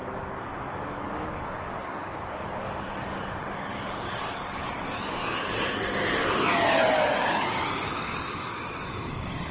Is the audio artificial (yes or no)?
yes